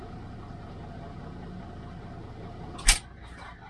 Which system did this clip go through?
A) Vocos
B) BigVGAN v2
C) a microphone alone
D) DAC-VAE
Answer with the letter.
C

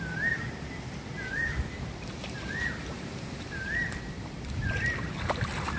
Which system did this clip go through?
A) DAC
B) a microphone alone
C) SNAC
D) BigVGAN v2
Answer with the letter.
D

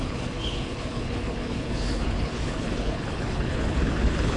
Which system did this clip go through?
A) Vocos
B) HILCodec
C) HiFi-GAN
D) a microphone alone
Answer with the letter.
B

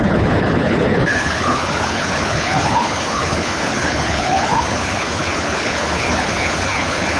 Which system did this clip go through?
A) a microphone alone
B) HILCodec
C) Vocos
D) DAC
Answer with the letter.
B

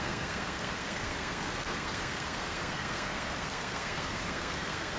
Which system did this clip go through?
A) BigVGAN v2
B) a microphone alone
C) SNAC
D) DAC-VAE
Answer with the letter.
C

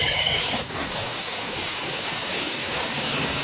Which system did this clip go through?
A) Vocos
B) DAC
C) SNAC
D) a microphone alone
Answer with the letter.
B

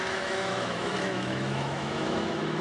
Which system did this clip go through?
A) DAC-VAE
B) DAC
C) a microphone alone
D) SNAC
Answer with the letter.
A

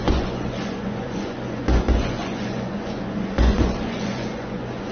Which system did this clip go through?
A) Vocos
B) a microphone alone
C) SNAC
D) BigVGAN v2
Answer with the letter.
A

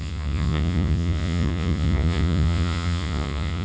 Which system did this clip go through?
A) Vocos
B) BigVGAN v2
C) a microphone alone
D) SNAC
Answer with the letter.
A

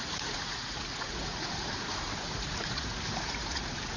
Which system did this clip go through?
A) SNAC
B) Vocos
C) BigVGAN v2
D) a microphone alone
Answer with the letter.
B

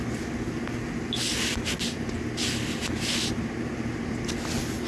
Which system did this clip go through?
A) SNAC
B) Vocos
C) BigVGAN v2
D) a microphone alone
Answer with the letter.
D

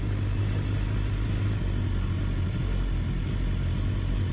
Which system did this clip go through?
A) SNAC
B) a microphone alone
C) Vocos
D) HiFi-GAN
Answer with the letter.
B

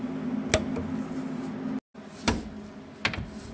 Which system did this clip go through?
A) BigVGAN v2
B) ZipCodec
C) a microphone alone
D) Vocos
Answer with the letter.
C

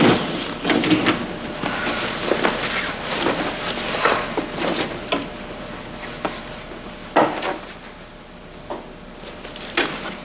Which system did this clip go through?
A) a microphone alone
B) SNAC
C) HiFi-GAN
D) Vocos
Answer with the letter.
A